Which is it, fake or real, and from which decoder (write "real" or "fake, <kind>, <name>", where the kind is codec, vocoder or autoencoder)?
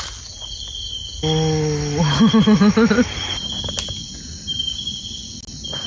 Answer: real